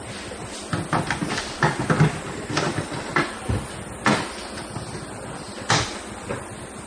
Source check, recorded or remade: recorded